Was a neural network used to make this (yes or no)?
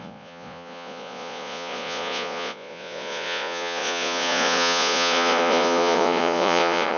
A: yes